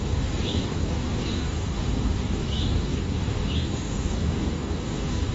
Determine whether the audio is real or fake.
fake